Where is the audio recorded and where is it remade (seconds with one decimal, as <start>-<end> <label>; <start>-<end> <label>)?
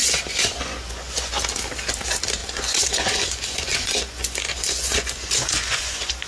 0.0-1.3 remade; 1.3-2.4 recorded; 2.4-6.3 remade